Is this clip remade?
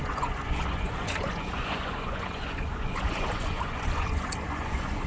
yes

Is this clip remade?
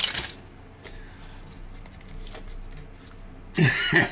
no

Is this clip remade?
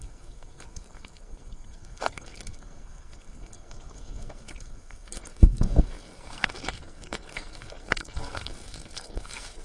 yes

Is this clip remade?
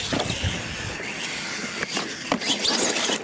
no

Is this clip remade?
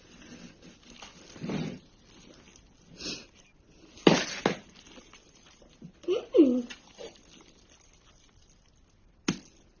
no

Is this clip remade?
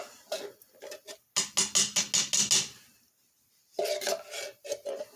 no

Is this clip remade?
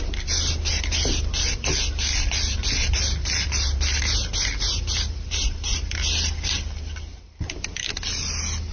no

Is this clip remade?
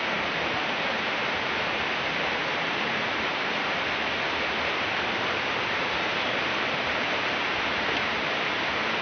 yes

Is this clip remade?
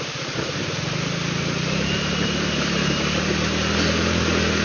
no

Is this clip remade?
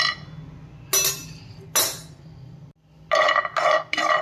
no